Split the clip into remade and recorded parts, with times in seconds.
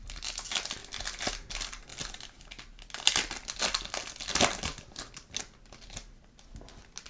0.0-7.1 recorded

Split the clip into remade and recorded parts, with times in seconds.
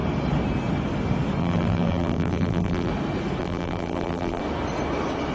0.0-1.4 recorded; 1.4-2.9 remade; 2.9-3.4 recorded; 3.4-4.4 remade; 4.4-5.3 recorded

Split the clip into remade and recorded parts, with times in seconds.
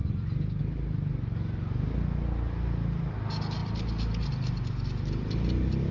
0.0-5.9 recorded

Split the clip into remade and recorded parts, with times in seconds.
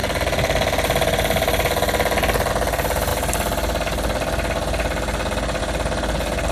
0.0-6.5 recorded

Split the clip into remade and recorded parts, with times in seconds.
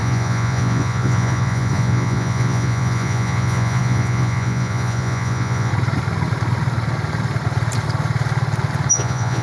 0.0-5.7 remade; 5.7-8.9 recorded; 8.9-9.4 remade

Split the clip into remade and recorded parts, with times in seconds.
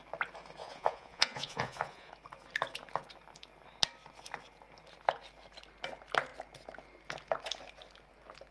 0.0-0.6 recorded; 0.6-2.1 remade; 2.1-8.5 recorded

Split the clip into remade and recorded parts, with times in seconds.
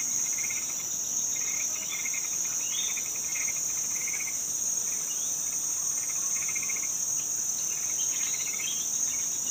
0.0-9.5 recorded